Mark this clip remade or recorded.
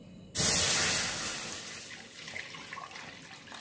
recorded